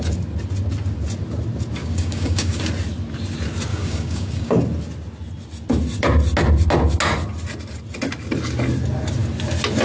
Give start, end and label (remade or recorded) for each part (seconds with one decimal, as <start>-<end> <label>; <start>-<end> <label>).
0.0-1.8 recorded; 1.8-2.6 remade; 2.6-3.7 recorded; 3.7-4.6 remade; 4.6-9.8 recorded